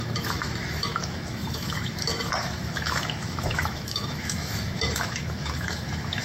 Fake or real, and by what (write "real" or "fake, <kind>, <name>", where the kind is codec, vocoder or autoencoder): fake, autoencoder, DAC-VAE